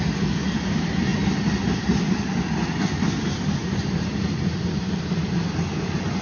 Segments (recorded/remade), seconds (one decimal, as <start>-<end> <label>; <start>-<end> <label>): 0.0-3.6 recorded; 3.6-4.9 remade; 4.9-6.2 recorded